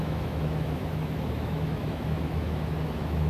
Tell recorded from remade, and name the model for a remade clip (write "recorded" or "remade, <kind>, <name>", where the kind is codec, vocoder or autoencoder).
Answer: remade, autoencoder, DAC-VAE